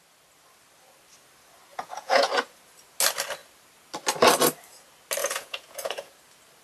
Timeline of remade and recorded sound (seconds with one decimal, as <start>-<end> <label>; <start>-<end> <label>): 0.0-1.7 recorded; 1.7-2.3 remade; 2.3-5.2 recorded; 5.2-6.1 remade; 6.1-6.6 recorded